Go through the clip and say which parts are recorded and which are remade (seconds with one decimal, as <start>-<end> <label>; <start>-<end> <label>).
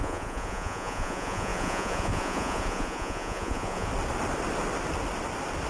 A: 0.0-3.9 remade; 3.9-5.7 recorded